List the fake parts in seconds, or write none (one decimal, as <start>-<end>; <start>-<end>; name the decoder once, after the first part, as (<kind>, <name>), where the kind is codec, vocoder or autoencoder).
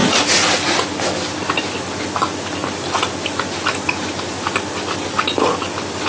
none